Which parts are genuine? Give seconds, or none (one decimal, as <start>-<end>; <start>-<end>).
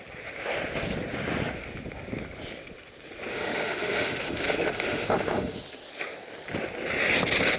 0.0-3.3; 5.6-7.6